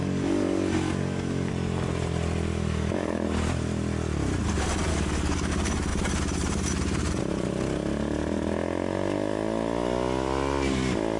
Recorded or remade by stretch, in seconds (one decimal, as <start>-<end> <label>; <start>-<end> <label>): 0.0-1.5 remade; 1.5-2.5 recorded; 2.5-3.2 remade; 3.2-4.9 recorded; 4.9-5.5 remade; 5.5-11.2 recorded